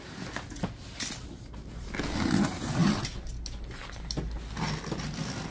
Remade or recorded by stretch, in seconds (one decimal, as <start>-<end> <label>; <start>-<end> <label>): 0.0-5.5 recorded